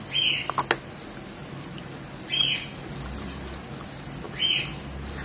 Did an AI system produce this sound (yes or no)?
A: no